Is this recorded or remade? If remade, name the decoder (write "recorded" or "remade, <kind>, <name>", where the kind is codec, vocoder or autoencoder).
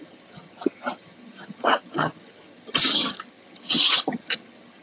remade, vocoder, HiFi-GAN